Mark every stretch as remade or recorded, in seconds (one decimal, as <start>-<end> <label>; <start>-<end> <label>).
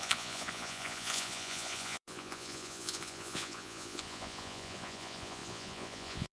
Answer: 0.0-6.3 remade